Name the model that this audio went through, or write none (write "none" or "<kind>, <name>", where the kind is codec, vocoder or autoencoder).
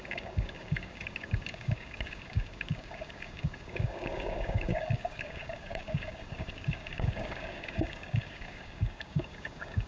codec, DAC